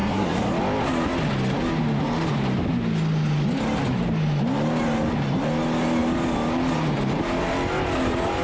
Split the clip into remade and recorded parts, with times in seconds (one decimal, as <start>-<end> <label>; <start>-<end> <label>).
0.0-0.5 remade; 0.5-8.4 recorded